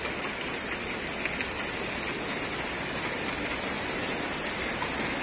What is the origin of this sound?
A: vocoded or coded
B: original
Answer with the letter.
B